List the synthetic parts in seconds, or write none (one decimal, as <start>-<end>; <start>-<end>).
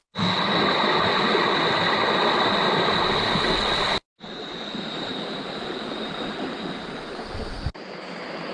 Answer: 5.1-6.9